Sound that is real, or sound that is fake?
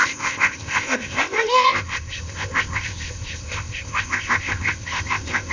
fake